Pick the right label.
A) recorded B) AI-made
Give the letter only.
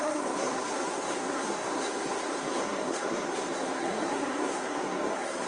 B